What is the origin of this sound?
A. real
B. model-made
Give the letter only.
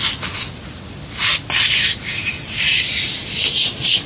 A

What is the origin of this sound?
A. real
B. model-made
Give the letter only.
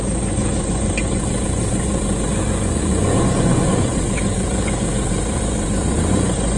B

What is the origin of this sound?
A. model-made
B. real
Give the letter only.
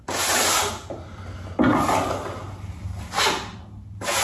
B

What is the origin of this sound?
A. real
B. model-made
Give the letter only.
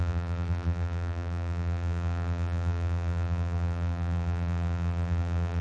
B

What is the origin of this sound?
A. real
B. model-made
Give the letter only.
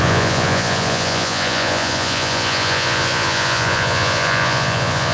B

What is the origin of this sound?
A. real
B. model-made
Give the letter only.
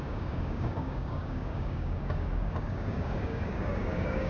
B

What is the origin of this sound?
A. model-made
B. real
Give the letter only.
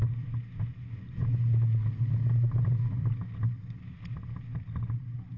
B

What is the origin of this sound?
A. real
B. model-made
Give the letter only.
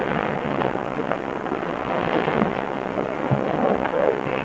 B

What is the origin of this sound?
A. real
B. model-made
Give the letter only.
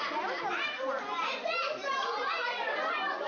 A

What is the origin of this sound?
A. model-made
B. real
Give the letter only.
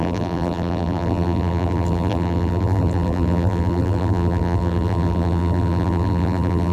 A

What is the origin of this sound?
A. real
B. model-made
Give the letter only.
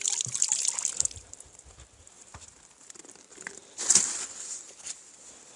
B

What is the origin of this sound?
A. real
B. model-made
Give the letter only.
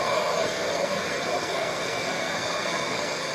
B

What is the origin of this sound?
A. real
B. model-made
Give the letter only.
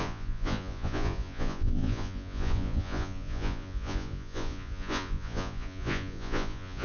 B